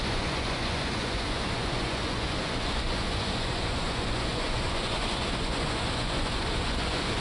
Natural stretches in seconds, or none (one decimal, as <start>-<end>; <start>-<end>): none

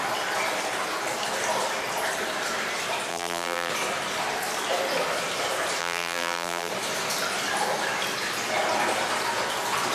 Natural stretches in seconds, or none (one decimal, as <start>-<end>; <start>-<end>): 0.0-3.1; 3.7-5.8; 6.7-9.9

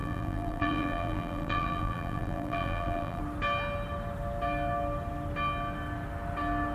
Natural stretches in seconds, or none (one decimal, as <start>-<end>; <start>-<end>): 3.2-6.7

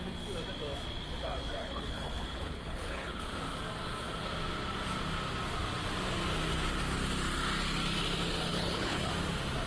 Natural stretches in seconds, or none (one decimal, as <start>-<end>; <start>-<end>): 0.0-1.6; 3.2-8.5; 9.1-9.7

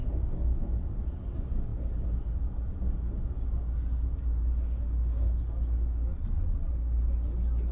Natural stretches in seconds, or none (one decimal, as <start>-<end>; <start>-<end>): 0.0-6.1; 6.7-7.7

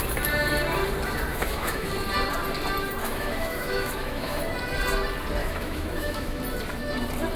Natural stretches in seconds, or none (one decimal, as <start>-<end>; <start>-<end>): 0.0-1.3; 1.9-3.0; 4.4-5.4; 6.4-7.4

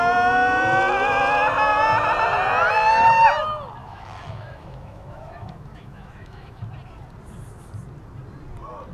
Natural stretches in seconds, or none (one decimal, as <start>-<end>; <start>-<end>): 0.0-3.8; 6.6-8.9